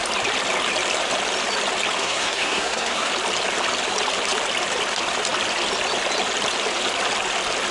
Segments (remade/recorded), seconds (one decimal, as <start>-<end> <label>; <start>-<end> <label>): 0.0-2.0 recorded; 2.0-3.1 remade; 3.1-7.7 recorded